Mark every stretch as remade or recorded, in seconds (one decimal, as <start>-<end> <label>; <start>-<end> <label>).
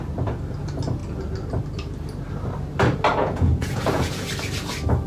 0.0-3.1 recorded; 3.1-4.3 remade; 4.3-5.1 recorded